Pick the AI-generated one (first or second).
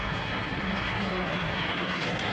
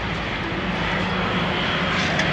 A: first